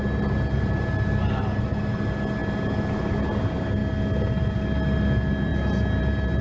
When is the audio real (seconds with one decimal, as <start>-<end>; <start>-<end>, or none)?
0.0-6.4